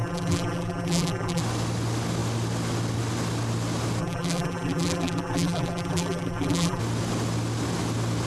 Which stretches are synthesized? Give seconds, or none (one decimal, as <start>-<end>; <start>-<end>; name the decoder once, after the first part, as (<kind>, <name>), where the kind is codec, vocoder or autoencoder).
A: 0.0-1.4 (vocoder, BigVGAN v2); 4.0-6.8